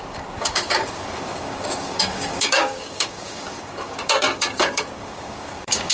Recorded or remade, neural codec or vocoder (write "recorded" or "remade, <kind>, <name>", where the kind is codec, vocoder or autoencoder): remade, codec, DAC